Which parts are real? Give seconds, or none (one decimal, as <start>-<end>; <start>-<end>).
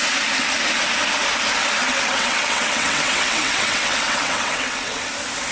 0.0-1.8; 5.1-5.5